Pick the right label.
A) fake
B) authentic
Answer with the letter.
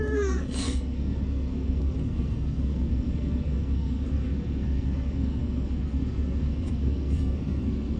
A